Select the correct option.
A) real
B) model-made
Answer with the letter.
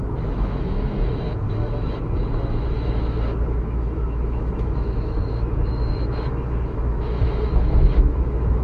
B